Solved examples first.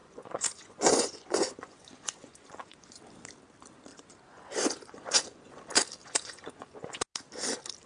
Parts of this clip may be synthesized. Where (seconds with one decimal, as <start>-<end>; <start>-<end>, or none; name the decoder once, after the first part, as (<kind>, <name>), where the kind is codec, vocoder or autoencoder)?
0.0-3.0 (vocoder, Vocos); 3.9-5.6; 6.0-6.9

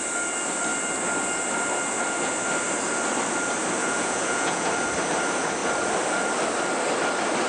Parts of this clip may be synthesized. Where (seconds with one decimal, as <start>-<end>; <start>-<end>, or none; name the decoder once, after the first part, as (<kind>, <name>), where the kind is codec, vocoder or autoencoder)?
3.8-4.7 (vocoder, Vocos)

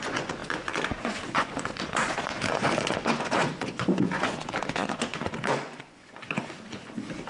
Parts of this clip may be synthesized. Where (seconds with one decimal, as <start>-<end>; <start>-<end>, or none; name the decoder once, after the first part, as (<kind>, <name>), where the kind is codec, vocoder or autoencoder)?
0.0-7.3 (vocoder, Vocos)